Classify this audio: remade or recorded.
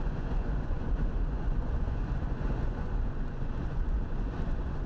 remade